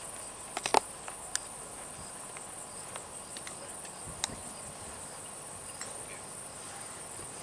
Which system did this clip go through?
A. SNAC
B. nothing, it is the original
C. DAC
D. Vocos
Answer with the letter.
B